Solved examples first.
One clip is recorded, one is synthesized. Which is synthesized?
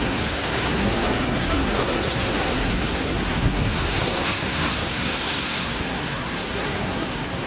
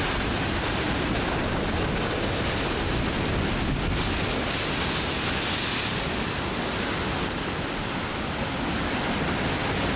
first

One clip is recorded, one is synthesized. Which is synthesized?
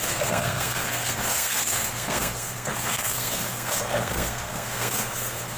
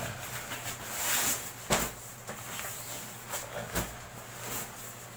first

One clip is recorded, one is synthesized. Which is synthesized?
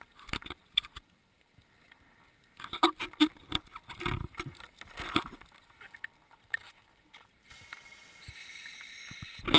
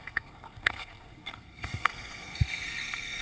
second